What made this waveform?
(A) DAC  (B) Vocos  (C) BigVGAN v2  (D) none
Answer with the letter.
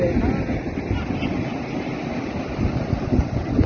D